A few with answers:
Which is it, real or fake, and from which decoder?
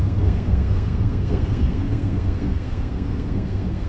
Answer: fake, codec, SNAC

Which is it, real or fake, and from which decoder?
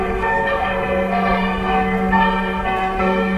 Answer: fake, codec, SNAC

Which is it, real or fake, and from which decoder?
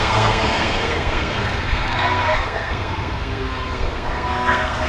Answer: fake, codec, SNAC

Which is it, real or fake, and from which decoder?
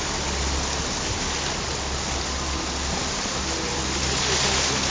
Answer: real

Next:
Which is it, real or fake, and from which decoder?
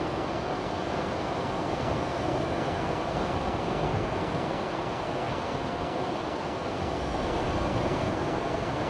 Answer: fake, codec, SNAC